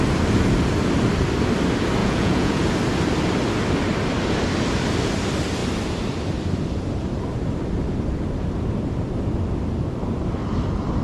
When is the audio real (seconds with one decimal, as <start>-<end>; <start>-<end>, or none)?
0.0-2.0; 2.7-11.0